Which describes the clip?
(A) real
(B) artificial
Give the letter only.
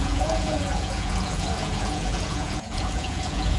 B